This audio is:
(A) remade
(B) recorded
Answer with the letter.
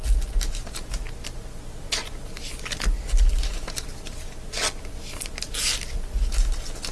B